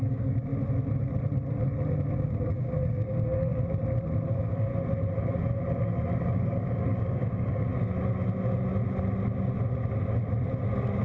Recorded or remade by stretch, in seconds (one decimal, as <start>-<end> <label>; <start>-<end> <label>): 0.0-0.5 remade; 0.5-2.1 recorded; 2.1-3.5 remade; 3.5-4.3 recorded; 4.3-4.7 remade; 4.7-6.2 recorded; 6.2-7.7 remade; 7.7-11.0 recorded